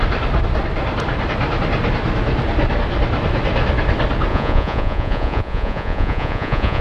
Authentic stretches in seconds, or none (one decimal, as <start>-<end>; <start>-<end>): 0.0-4.3